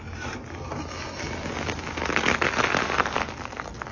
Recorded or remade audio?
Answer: recorded